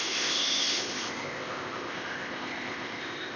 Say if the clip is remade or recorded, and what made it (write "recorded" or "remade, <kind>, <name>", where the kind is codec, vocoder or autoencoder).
remade, codec, ZipCodec